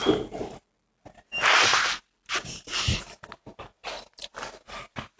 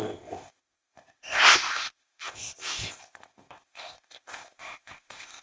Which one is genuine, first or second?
first